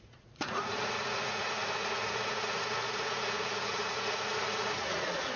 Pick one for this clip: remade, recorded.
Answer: remade